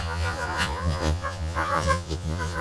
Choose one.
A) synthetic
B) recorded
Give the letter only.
A